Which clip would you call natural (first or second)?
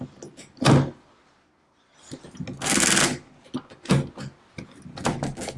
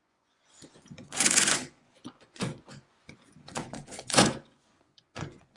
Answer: first